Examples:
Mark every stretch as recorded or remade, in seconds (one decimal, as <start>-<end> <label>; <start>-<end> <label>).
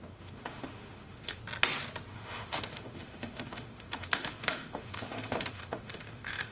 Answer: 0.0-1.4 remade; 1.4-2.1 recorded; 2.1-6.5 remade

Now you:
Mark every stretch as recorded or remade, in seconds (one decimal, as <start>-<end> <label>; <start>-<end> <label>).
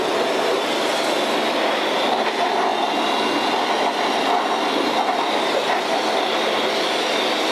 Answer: 0.0-7.5 recorded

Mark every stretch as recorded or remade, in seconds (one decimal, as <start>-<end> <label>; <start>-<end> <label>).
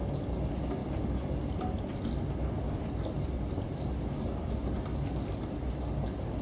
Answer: 0.0-6.4 recorded